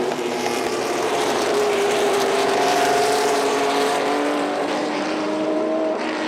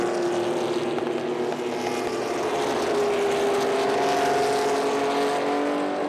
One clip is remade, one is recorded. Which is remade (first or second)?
first